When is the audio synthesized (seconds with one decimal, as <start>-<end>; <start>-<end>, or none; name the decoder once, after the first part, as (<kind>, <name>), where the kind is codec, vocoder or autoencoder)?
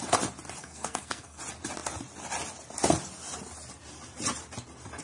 0.6-1.4 (codec, SNAC)